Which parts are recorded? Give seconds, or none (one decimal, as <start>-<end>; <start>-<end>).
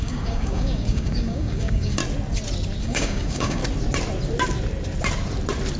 2.0-2.8; 3.6-5.8